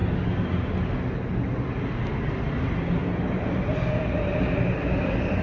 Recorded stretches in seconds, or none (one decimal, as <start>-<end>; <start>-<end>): 0.0-5.4